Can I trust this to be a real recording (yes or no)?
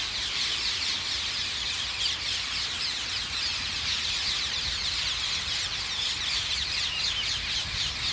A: yes